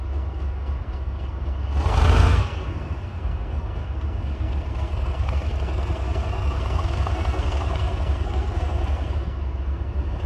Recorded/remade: remade